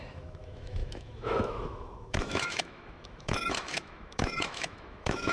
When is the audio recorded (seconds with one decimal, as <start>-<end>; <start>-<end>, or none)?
none